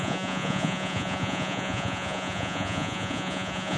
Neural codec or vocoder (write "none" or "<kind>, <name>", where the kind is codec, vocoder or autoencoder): vocoder, Vocos